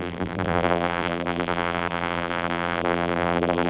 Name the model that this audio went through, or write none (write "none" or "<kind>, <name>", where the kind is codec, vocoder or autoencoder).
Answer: vocoder, BigVGAN v2